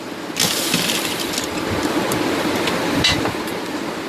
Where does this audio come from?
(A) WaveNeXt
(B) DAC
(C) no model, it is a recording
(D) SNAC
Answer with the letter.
C